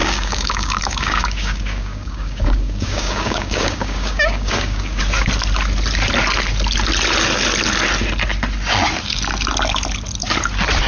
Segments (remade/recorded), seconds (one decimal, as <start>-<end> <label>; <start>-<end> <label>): 0.0-5.0 remade; 5.0-10.9 recorded